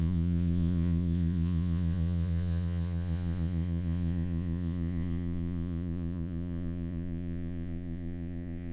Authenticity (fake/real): fake